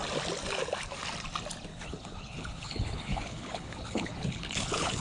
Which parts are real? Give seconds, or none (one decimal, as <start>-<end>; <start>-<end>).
0.0-1.7